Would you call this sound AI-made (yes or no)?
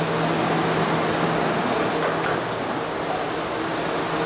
no